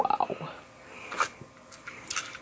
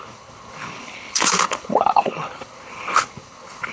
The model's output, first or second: second